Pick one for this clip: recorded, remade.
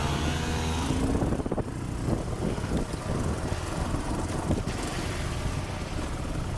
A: recorded